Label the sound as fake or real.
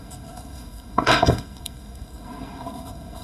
fake